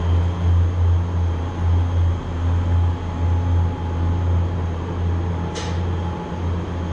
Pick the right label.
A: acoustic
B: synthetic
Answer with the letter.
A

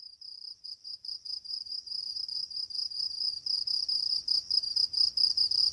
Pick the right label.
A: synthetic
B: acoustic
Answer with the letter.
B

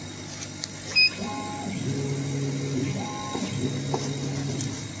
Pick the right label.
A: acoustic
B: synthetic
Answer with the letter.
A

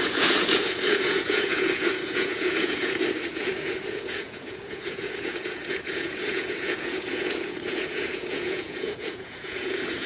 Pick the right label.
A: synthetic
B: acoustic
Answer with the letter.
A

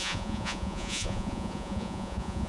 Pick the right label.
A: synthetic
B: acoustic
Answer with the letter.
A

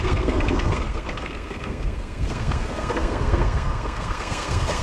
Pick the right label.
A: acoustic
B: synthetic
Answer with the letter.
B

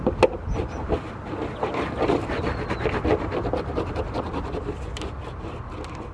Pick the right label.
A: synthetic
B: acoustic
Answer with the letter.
B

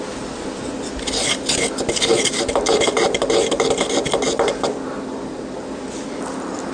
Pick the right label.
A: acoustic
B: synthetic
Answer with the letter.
A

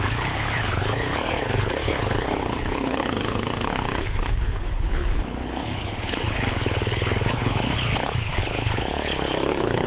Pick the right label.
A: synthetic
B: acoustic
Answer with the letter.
A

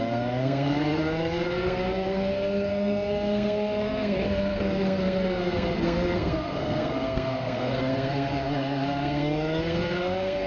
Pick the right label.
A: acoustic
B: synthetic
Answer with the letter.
B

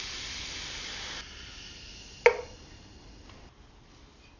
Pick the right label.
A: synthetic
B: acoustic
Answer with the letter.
B